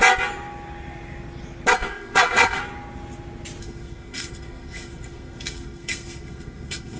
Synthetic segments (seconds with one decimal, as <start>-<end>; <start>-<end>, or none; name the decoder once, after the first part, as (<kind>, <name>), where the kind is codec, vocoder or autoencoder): 1.7-2.6 (codec, SNAC); 3.6-7.0